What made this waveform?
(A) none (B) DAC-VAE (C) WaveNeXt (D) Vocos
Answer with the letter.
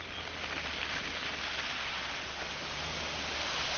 A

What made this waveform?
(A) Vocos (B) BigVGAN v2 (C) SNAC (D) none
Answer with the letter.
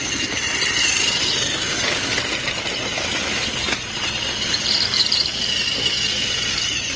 B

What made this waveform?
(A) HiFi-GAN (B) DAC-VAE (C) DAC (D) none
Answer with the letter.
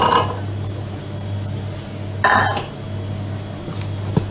D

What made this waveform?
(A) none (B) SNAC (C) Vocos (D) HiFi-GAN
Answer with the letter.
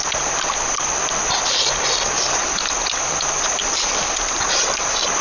A